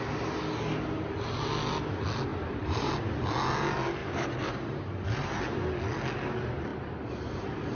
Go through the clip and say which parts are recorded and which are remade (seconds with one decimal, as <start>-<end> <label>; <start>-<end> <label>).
0.0-2.3 recorded; 2.3-2.9 remade; 2.9-4.0 recorded; 4.0-5.4 remade; 5.4-7.7 recorded